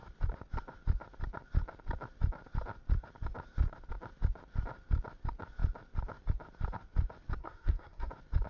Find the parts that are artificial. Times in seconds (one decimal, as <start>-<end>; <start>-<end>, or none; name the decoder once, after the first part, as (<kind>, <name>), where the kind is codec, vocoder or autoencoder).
7.4-8.1 (codec, SNAC)